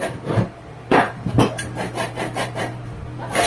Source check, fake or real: fake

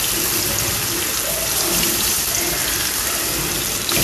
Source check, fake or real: real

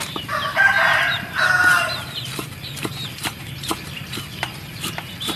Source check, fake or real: fake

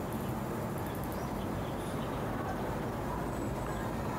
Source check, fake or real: real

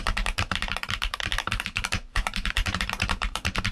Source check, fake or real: fake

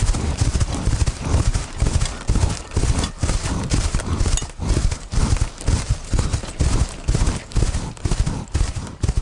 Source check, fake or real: fake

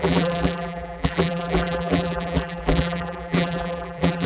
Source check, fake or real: fake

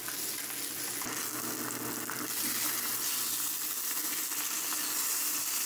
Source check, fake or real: real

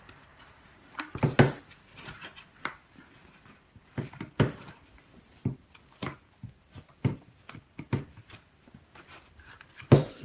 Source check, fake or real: fake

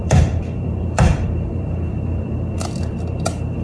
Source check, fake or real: fake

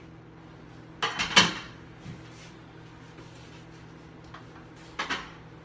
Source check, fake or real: real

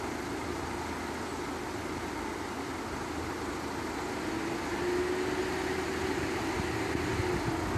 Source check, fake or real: real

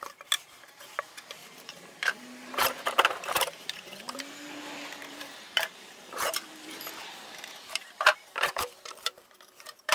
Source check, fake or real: fake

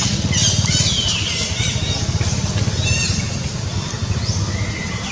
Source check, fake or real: real